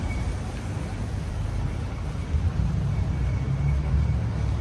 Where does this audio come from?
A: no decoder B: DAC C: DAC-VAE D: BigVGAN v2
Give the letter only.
D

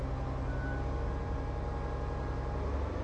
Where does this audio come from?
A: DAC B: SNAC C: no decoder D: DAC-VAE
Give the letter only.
C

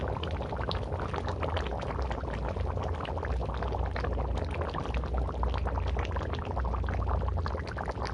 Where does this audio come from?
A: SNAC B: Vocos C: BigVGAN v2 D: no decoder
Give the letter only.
D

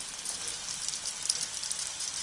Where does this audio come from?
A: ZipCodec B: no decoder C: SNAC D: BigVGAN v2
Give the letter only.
B